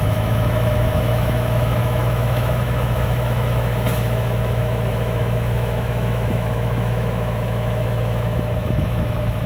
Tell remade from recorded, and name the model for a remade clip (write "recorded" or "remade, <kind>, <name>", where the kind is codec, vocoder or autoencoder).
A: remade, autoencoder, DAC-VAE